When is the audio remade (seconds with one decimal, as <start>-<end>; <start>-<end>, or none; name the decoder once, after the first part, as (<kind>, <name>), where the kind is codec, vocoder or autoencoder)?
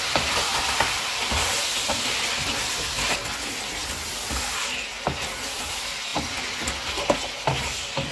0.5-3.2 (vocoder, BigVGAN v2)